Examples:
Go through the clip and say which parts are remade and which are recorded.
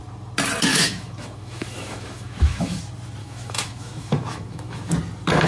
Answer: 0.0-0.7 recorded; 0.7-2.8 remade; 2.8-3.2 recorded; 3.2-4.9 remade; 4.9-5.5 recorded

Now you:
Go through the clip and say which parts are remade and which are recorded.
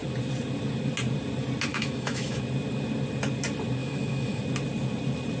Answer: 0.0-1.7 recorded; 1.7-2.4 remade; 2.4-3.8 recorded; 3.8-4.4 remade; 4.4-5.4 recorded